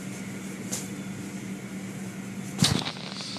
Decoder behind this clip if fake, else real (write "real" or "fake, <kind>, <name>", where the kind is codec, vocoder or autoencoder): real